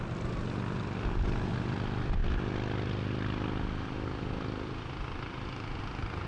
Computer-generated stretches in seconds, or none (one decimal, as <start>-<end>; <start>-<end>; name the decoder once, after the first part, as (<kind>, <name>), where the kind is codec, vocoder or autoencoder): none

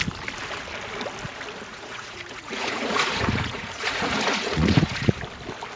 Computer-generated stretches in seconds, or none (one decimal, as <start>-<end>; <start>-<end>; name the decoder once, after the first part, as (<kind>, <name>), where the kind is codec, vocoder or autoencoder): 1.7-5.2 (vocoder, Vocos)

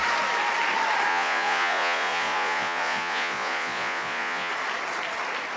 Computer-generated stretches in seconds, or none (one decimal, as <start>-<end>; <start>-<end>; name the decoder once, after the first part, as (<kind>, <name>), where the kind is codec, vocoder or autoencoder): 1.1-4.5 (vocoder, Vocos)

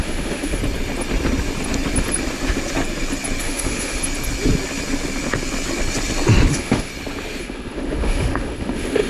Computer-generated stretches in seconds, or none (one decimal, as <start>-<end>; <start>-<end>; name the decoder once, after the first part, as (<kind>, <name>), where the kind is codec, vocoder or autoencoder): 0.0-0.6 (autoencoder, DAC-VAE); 3.4-4.0; 6.5-6.9; 7.4-9.1